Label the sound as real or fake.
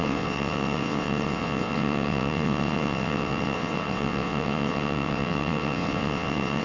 fake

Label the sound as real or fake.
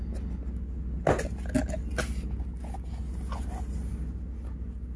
real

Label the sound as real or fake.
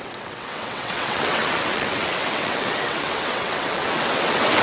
fake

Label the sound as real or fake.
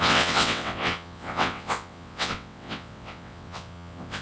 fake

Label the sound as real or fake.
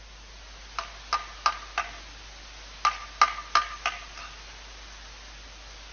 real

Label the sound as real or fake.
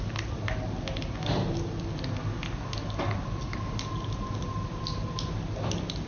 real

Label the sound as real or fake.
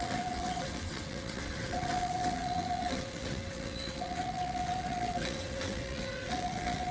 fake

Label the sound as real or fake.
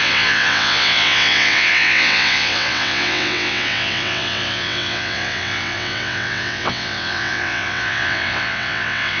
fake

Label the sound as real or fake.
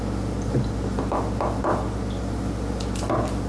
real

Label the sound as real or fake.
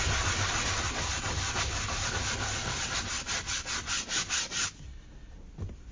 real